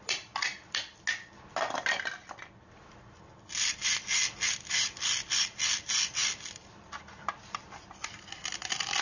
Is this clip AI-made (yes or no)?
no